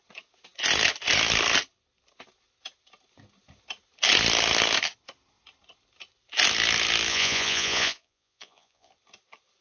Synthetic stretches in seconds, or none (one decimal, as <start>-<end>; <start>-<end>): 7.1-8.9